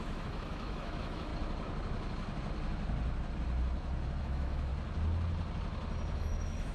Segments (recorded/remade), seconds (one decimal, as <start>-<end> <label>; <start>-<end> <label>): 0.0-1.3 remade; 1.3-4.2 recorded; 4.2-4.7 remade; 4.7-6.2 recorded; 6.2-6.7 remade